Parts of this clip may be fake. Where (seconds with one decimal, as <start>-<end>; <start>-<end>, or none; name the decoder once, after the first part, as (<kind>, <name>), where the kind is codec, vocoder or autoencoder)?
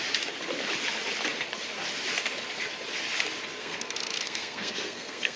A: 3.6-5.4 (codec, SNAC)